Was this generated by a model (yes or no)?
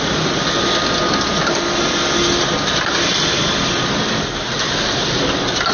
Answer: yes